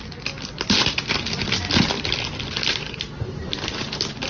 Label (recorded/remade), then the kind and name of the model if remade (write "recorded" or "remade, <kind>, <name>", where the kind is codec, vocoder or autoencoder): recorded